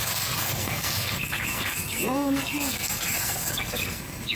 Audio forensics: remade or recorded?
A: remade